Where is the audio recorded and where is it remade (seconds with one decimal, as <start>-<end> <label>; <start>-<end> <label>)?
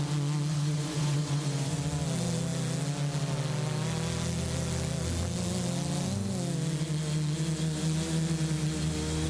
0.0-0.5 recorded; 0.5-1.8 remade; 1.8-9.3 recorded